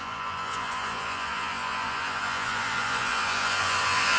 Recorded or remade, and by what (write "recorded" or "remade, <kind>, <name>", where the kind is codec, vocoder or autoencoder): remade, vocoder, Vocos